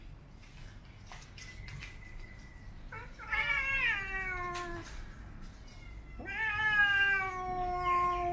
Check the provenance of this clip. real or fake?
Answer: real